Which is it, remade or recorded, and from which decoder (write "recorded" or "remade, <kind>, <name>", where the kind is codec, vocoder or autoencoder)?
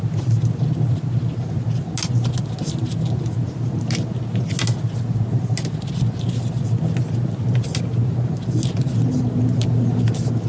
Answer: recorded